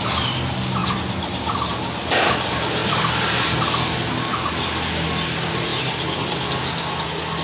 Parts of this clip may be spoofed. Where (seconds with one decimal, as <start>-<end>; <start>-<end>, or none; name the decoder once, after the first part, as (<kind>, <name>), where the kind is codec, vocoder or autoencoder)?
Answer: 0.8-2.3 (vocoder, BigVGAN v2); 2.8-3.6; 5.7-6.6